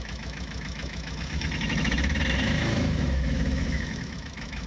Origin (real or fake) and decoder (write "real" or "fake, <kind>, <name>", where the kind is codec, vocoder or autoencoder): fake, autoencoder, DAC-VAE